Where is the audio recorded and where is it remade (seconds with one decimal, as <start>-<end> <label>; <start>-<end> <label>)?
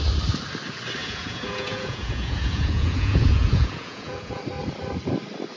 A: 0.0-1.0 recorded; 1.0-4.4 remade; 4.4-5.6 recorded